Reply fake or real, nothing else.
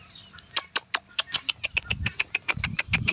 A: real